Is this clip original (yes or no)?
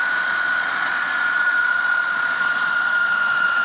no